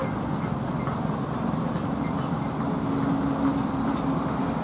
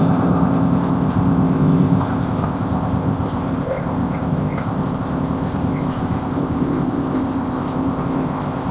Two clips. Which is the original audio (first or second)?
first